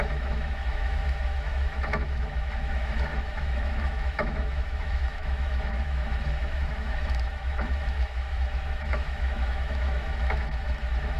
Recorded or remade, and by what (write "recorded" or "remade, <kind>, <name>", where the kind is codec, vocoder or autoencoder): remade, autoencoder, DAC-VAE